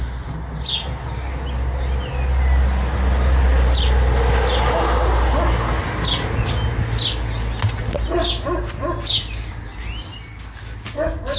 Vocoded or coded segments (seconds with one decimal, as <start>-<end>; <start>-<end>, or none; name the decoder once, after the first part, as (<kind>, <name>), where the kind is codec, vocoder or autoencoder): none